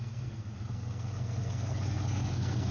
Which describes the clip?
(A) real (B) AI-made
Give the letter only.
B